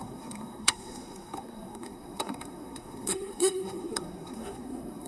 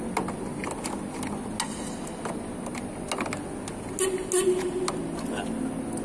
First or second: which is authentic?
second